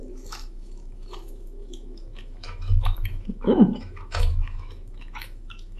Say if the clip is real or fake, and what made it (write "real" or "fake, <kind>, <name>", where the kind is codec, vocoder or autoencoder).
fake, autoencoder, DAC-VAE